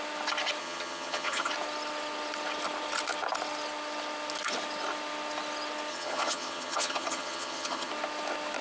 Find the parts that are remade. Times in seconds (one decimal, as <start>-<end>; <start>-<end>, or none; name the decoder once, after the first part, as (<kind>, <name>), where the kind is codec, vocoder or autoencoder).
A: 0.6-1.5 (vocoder, HiFi-GAN); 5.9-7.9